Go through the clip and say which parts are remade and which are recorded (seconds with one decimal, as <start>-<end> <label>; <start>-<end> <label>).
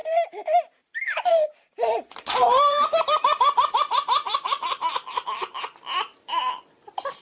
0.0-0.7 remade; 0.7-1.3 recorded; 1.3-5.6 remade; 5.6-7.2 recorded